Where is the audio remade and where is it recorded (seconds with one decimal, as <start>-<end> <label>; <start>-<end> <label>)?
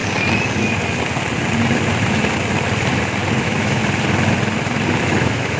0.0-3.4 recorded; 3.4-3.8 remade; 3.8-5.0 recorded; 5.0-5.6 remade